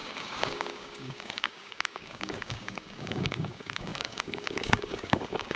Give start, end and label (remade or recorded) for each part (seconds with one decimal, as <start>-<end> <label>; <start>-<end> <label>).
0.0-5.6 remade